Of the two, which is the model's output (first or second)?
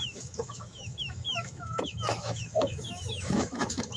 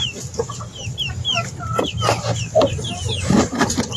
first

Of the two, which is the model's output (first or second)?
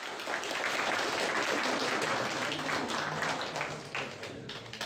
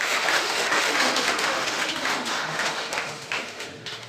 second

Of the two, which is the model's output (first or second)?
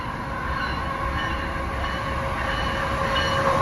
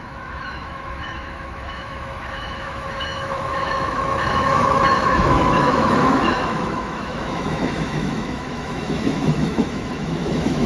second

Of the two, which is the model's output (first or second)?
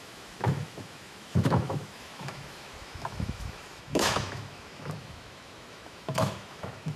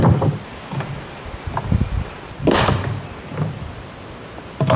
first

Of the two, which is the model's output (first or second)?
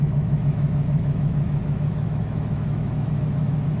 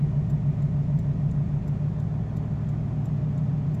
first